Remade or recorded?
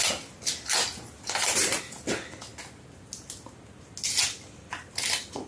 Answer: recorded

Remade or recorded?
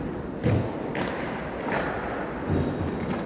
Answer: recorded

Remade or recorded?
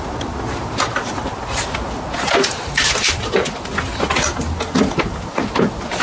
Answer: recorded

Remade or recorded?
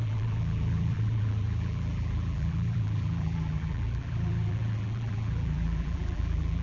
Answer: remade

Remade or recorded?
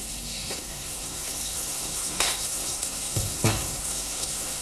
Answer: remade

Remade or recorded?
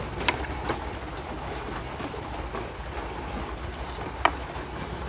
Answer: recorded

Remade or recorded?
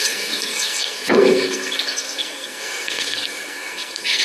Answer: remade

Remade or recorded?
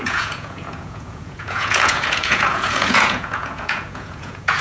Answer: remade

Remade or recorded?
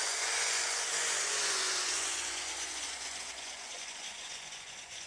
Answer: remade